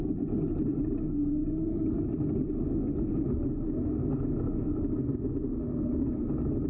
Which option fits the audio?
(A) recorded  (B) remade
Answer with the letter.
A